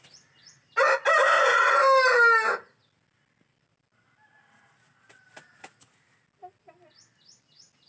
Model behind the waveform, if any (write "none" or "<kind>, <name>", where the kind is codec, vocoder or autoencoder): none